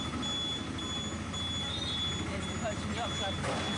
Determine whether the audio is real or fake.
real